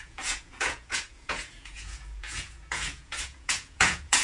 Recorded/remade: remade